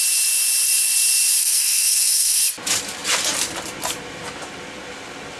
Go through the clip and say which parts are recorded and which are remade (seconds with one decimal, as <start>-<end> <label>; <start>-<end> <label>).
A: 0.0-1.4 recorded; 1.4-2.4 remade; 2.4-5.4 recorded